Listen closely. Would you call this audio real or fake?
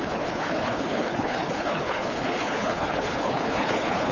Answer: fake